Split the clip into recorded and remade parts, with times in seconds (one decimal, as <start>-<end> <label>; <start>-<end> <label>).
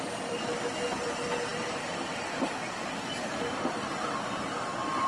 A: 0.0-5.1 recorded